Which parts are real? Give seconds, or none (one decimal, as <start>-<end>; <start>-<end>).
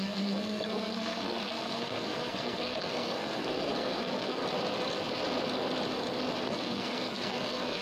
4.4-6.4